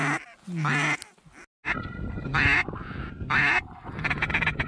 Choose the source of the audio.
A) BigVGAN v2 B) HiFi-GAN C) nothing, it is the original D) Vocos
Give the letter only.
C